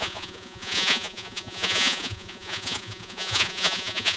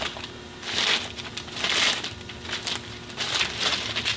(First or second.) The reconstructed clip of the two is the first